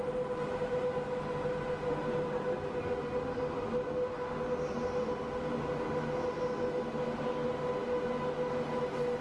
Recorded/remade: recorded